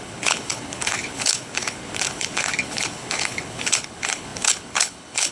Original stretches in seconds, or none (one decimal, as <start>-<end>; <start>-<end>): none